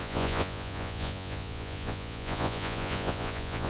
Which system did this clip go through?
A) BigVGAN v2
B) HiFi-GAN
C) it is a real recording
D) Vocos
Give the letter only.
D